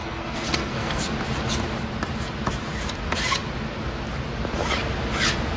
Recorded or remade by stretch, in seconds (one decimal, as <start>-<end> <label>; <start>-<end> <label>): 0.0-1.1 remade; 1.1-5.6 recorded

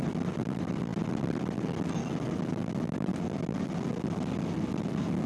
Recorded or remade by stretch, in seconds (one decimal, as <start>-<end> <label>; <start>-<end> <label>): 0.0-5.3 recorded